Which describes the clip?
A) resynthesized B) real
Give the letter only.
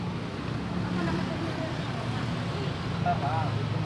B